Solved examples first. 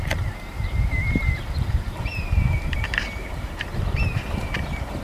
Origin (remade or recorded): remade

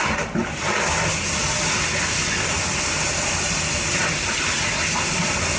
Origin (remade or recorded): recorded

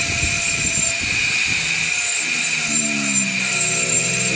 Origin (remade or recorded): recorded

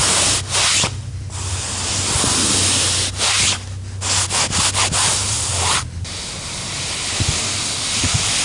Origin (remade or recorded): recorded